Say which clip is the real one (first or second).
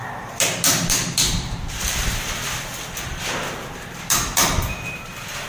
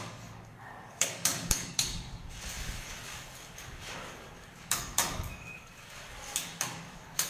first